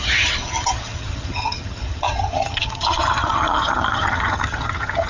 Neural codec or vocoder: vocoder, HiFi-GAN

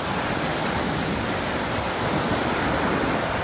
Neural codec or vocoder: none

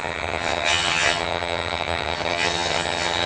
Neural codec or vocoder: vocoder, HiFi-GAN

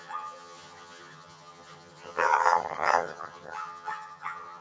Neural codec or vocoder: vocoder, HiFi-GAN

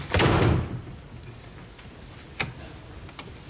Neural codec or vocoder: none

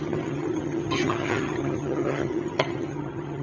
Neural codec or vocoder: vocoder, HiFi-GAN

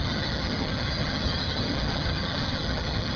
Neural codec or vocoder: vocoder, HiFi-GAN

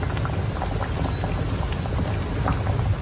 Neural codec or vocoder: none